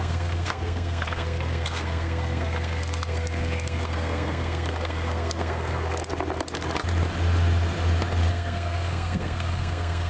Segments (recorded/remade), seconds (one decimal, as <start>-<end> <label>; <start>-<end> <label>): 0.0-6.0 remade; 6.0-8.3 recorded; 8.3-10.1 remade